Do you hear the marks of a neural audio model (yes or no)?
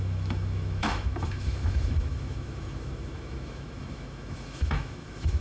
yes